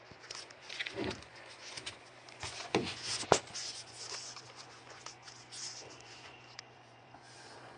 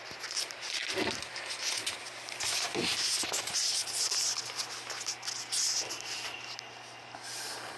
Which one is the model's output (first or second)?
first